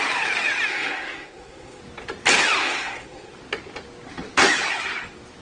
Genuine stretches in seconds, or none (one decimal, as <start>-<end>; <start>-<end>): 0.0-0.7; 1.8-2.6; 3.3-5.4